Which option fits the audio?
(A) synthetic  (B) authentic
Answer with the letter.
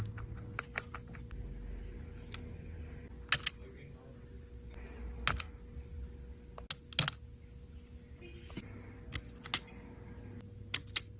B